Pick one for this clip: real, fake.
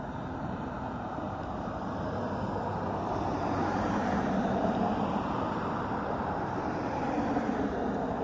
fake